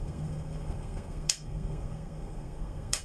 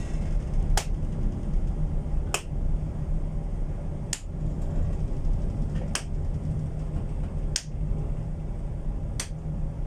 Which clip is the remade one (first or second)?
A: first